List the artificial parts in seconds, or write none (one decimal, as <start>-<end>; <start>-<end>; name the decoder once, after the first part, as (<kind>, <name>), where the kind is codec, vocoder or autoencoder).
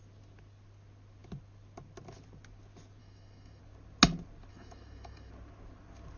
3.0-3.6 (autoencoder, DAC-VAE); 4.5-5.3